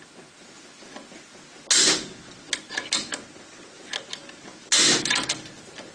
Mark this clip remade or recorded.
recorded